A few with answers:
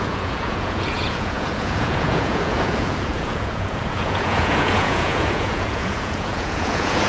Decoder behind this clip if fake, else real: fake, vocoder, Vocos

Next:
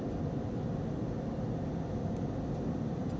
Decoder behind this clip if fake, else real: real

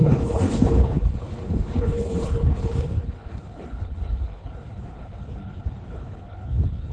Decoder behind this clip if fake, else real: fake, codec, HILCodec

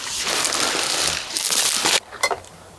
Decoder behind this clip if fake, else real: real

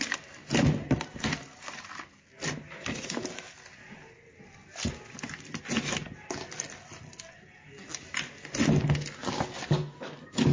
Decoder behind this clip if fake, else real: real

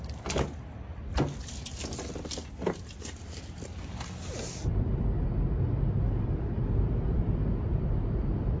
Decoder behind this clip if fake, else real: real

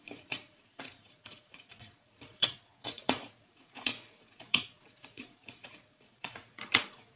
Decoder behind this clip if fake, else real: fake, vocoder, Vocos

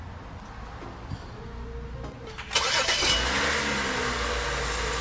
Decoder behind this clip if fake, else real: real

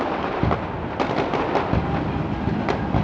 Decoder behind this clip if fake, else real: real